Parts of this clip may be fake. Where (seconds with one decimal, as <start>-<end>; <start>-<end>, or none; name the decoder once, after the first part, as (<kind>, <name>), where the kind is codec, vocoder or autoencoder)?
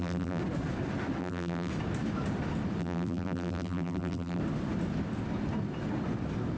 0.0-0.4 (vocoder, BigVGAN v2); 1.2-1.7; 2.8-4.4